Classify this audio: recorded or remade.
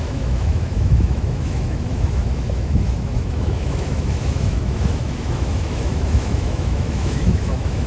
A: remade